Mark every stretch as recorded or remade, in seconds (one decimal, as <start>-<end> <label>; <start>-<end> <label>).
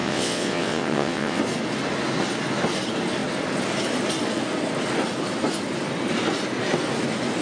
0.0-1.4 remade; 1.4-7.4 recorded